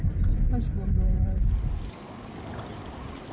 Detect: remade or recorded recorded